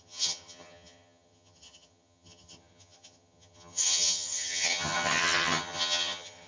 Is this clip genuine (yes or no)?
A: no